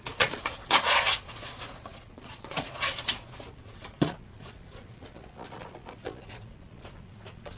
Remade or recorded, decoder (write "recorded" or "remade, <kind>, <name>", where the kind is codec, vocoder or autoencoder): remade, vocoder, Vocos